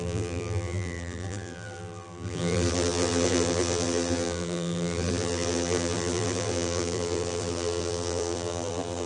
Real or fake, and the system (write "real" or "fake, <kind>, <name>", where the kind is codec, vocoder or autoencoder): fake, vocoder, BigVGAN v2